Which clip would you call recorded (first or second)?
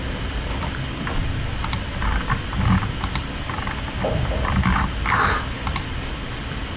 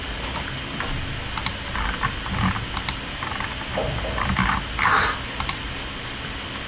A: second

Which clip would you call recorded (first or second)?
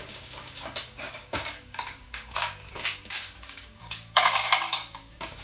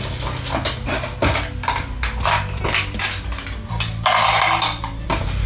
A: second